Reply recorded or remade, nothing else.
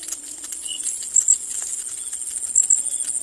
recorded